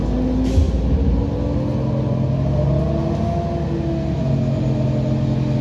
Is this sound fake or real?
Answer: real